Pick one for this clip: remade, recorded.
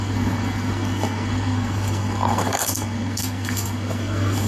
remade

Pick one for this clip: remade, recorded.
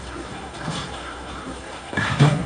remade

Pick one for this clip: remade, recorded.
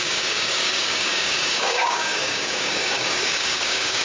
remade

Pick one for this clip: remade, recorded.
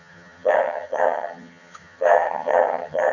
remade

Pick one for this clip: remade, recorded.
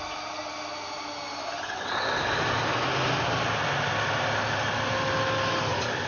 recorded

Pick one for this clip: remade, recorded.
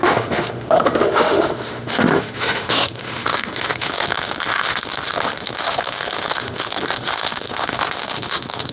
remade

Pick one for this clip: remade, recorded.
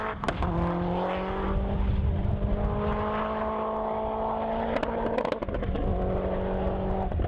recorded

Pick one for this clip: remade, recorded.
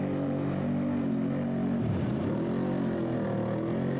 recorded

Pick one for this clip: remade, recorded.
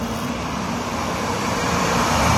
remade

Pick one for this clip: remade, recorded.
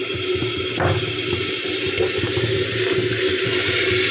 recorded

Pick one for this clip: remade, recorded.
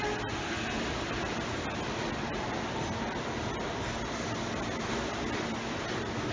recorded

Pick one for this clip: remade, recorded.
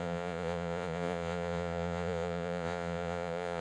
remade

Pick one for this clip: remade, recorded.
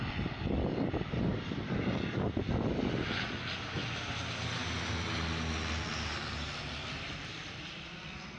recorded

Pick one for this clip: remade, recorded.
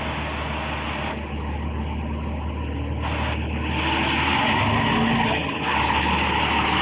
recorded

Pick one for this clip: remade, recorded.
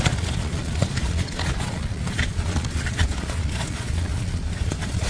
remade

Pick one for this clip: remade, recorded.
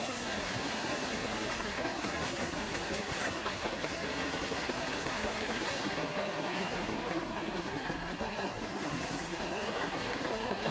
remade